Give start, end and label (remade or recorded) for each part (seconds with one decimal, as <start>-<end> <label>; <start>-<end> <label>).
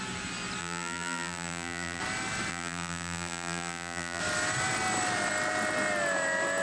0.0-0.6 recorded; 0.6-2.0 remade; 2.0-2.5 recorded; 2.5-4.2 remade; 4.2-6.6 recorded